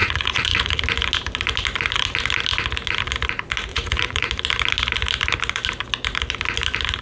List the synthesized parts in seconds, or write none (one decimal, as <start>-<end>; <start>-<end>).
0.0-0.8; 3.7-4.3